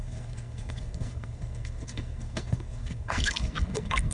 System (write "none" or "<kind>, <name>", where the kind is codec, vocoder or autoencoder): codec, SNAC